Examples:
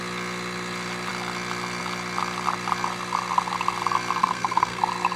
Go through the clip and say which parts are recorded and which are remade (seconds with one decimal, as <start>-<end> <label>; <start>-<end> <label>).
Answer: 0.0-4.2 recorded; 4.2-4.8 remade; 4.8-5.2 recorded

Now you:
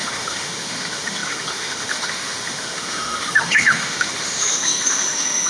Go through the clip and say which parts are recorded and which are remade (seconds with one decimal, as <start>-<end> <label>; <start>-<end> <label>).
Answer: 0.0-5.5 remade

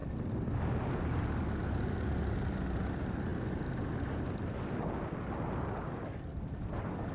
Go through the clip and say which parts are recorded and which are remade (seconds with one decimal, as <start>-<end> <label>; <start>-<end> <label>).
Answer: 0.0-7.1 recorded